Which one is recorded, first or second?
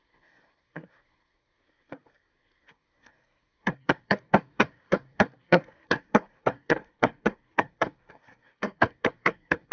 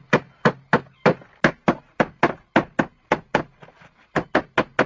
second